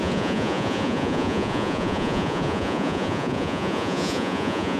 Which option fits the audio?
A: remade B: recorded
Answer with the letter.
A